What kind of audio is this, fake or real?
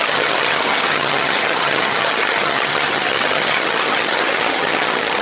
fake